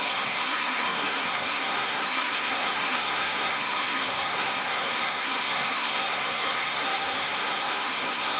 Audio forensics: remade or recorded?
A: remade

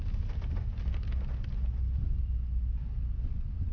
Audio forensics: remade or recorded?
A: recorded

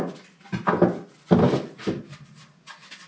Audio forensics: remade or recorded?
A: recorded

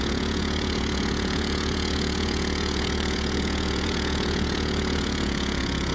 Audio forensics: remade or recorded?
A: remade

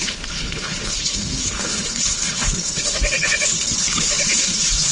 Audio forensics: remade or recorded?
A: remade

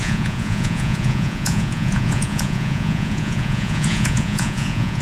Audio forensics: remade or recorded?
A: remade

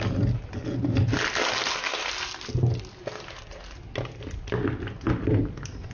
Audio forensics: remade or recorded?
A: recorded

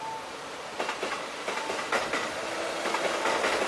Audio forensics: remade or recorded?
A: remade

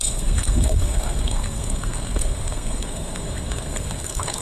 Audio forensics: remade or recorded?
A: remade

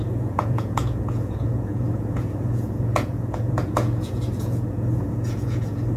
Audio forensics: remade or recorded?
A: remade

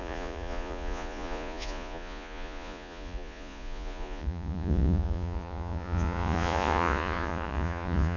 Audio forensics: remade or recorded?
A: remade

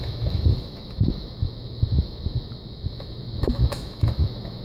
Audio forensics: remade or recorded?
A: remade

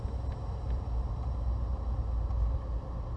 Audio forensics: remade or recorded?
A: recorded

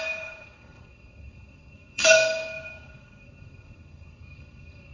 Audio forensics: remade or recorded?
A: remade